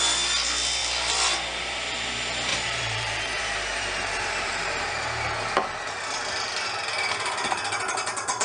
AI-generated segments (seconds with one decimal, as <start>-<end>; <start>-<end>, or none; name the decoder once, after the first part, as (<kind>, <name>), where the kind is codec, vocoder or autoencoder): 2.5-4.9 (vocoder, BigVGAN v2)